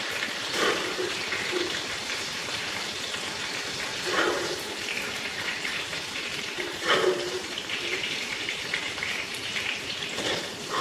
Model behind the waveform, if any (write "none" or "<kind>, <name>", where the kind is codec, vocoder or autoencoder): vocoder, BigVGAN v2